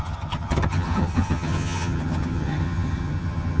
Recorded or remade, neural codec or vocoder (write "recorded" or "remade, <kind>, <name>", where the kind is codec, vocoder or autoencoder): remade, vocoder, HiFi-GAN